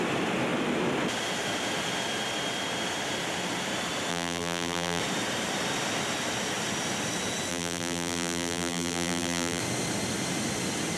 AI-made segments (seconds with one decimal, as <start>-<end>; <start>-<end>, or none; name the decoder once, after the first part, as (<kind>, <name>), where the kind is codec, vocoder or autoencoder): 4.1-5.0 (vocoder, BigVGAN v2); 7.5-9.6